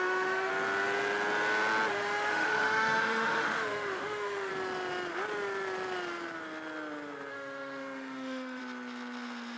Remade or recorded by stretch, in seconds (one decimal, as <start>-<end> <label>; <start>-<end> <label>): 0.0-0.5 remade; 0.5-1.9 recorded; 1.9-4.5 remade; 4.5-7.3 recorded; 7.3-8.6 remade; 8.6-9.6 recorded